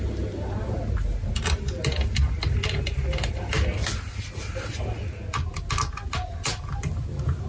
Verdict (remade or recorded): recorded